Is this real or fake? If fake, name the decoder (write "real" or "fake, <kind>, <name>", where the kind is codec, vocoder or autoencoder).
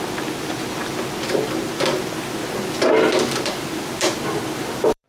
fake, vocoder, BigVGAN v2